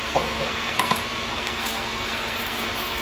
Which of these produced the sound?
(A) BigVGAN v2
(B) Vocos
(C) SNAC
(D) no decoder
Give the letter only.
C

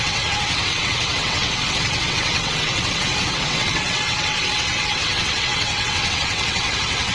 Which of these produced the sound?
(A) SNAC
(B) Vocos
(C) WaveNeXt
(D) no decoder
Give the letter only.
C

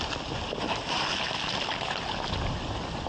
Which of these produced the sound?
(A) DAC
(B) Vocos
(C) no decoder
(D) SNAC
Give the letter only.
C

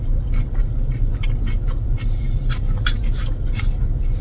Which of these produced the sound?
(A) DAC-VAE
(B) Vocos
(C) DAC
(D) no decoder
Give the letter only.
D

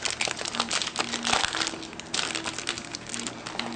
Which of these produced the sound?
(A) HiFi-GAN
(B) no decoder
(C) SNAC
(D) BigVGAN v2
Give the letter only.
B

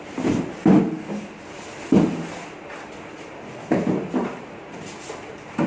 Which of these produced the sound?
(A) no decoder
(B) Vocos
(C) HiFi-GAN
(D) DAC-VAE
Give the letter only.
A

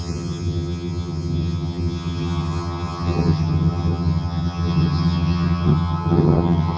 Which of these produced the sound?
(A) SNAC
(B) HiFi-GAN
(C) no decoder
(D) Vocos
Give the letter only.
B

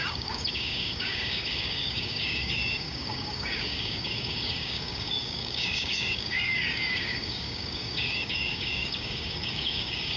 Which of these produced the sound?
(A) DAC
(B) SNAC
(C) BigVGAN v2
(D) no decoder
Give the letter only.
A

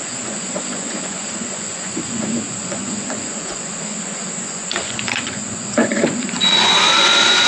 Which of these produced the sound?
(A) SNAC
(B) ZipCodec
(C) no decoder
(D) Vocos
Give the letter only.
D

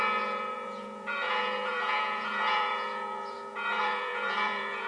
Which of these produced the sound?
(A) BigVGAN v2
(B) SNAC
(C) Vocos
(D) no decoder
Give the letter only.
C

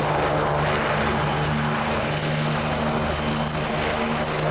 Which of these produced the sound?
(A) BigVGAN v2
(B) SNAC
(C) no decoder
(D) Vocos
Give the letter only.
C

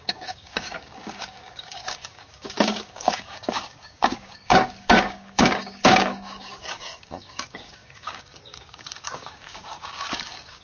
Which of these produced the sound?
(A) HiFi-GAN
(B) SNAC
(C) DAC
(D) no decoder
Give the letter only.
C